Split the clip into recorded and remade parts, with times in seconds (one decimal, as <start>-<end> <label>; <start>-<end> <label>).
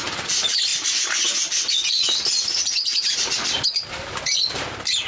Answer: 0.0-5.1 recorded